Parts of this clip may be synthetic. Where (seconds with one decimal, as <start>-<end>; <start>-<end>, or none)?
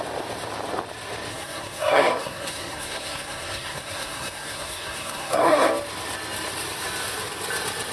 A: 1.3-5.7